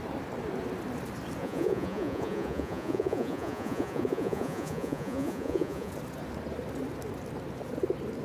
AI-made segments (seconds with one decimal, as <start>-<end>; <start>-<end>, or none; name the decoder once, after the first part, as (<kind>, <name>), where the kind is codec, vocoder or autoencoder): 1.4-5.9 (vocoder, Vocos)